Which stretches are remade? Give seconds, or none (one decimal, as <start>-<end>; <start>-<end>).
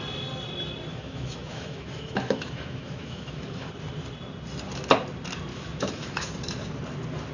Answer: 0.9-3.7; 5.5-6.3